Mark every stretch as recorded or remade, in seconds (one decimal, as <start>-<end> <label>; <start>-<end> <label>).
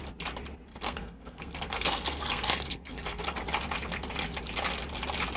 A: 0.0-0.7 recorded; 0.7-3.4 remade; 3.4-5.4 recorded